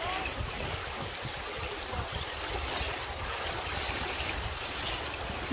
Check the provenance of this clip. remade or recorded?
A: recorded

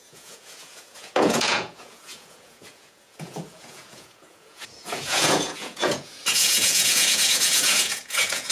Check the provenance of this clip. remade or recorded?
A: remade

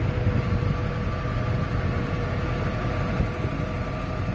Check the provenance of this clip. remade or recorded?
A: recorded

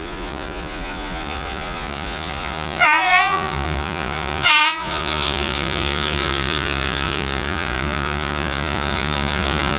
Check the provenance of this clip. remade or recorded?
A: remade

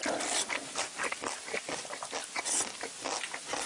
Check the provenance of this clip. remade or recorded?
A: recorded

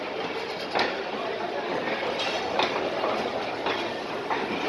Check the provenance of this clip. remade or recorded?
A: recorded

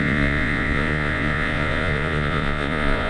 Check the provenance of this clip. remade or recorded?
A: remade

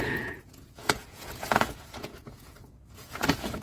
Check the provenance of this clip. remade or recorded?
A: remade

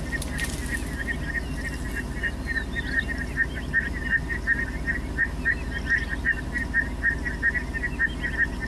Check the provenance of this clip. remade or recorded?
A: recorded